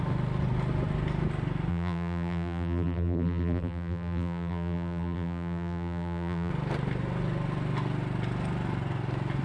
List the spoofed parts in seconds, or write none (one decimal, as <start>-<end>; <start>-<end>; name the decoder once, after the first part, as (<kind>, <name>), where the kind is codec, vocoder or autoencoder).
1.7-6.5 (vocoder, BigVGAN v2)